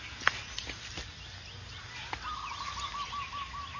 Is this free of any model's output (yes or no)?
yes